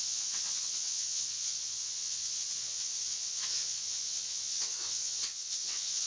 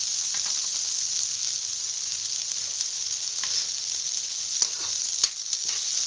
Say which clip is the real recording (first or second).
second